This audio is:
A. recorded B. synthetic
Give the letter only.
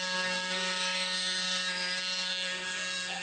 B